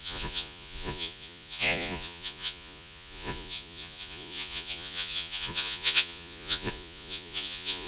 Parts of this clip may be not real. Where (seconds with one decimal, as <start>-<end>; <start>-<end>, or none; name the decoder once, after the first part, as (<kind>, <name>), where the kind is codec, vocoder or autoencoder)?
0.0-7.9 (vocoder, Vocos)